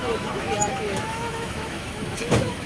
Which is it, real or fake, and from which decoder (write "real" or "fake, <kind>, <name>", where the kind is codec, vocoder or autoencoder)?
fake, autoencoder, DAC-VAE